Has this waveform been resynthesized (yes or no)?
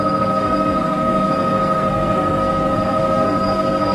yes